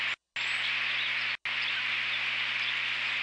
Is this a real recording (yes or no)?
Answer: yes